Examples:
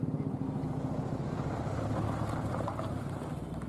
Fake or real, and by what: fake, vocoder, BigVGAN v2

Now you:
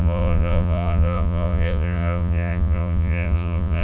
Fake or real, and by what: fake, vocoder, Vocos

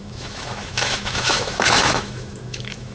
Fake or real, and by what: fake, autoencoder, DAC-VAE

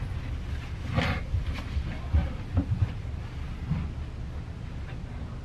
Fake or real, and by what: real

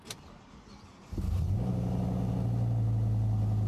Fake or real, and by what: real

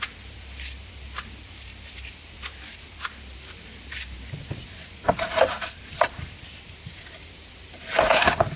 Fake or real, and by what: real